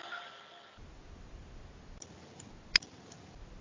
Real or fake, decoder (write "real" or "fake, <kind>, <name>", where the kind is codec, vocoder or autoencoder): real